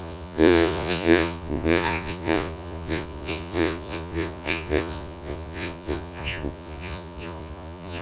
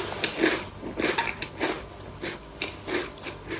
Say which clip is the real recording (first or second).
second